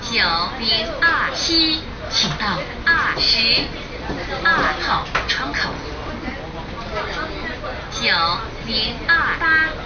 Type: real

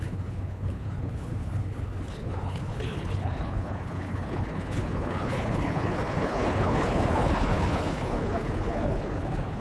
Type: fake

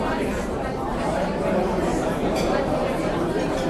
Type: fake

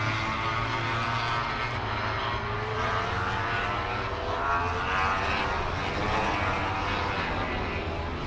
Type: real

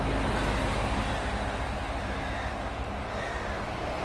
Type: real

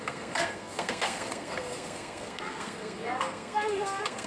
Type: fake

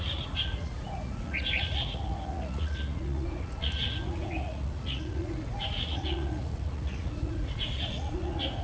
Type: fake